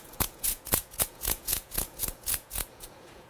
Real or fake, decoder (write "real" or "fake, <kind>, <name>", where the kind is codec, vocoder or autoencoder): fake, vocoder, Vocos